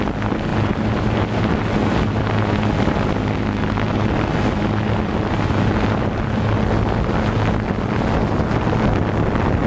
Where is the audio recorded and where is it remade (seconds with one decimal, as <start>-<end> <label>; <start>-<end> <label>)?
0.0-0.5 recorded; 0.5-1.4 remade; 1.4-9.7 recorded